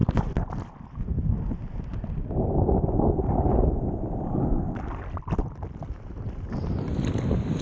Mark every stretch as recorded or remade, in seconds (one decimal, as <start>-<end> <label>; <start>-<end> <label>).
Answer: 0.0-7.6 recorded